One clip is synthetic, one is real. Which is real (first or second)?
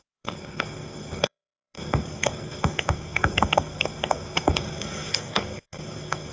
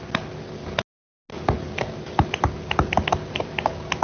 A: second